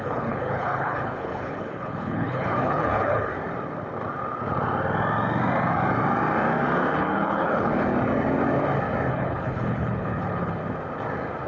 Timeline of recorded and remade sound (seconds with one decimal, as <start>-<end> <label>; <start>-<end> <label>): 0.0-3.3 remade; 3.3-6.9 recorded; 6.9-7.7 remade; 7.7-9.1 recorded; 9.1-10.6 remade; 10.6-11.5 recorded